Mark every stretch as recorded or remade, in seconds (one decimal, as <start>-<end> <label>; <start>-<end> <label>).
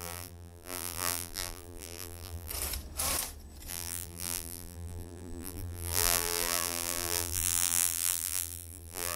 0.0-2.5 remade; 2.5-3.7 recorded; 3.7-9.2 remade